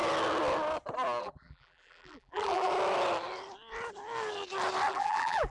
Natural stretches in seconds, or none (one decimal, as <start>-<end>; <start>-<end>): 0.0-1.2; 2.7-4.9